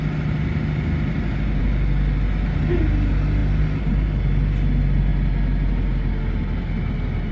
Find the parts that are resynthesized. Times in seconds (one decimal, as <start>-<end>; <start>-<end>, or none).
none